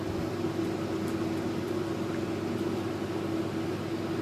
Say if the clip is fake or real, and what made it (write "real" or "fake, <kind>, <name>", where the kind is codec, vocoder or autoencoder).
real